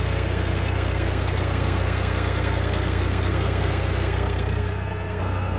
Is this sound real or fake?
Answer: fake